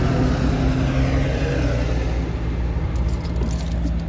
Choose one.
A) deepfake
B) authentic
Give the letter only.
B